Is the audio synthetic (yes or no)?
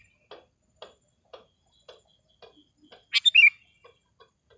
no